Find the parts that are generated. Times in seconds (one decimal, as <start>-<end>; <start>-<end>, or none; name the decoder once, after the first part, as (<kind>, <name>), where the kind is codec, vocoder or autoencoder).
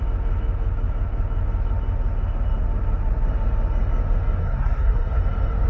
4.4-5.2 (codec, SNAC)